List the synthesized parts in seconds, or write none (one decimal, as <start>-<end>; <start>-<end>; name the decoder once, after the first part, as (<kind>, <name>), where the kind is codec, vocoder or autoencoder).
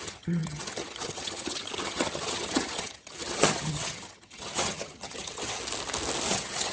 0.0-5.6 (vocoder, HiFi-GAN); 6.3-6.7